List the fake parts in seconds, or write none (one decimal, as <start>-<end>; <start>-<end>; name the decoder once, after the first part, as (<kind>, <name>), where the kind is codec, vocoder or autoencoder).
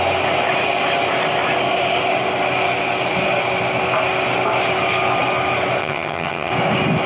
5.8-6.5 (vocoder, HiFi-GAN)